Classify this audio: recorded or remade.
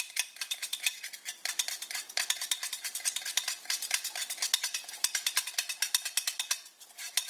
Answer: recorded